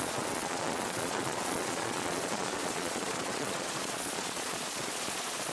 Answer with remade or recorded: remade